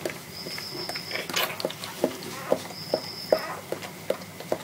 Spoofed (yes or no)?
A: no